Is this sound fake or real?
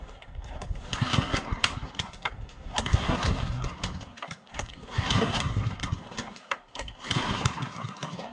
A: fake